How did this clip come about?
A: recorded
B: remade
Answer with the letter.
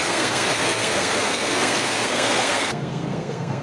B